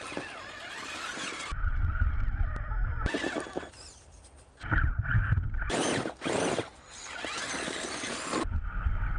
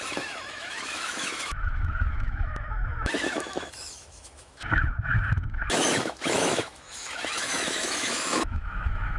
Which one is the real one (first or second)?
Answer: first